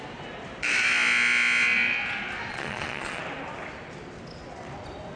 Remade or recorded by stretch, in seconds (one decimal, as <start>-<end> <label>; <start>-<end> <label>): 0.0-2.5 recorded; 2.5-3.2 remade; 3.2-5.2 recorded